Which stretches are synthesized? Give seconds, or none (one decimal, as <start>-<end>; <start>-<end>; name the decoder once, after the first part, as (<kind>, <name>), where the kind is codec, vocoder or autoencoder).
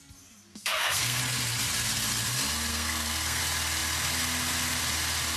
0.5-1.2 (codec, SNAC); 2.7-3.4